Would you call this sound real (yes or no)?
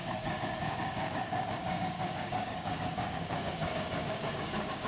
no